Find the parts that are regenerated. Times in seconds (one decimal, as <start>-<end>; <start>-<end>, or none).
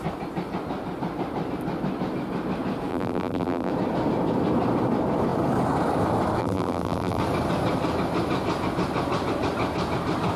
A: 2.9-3.7; 6.4-7.2